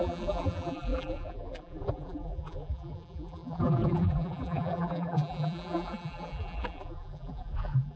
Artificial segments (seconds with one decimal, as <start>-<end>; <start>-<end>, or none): 0.0-8.0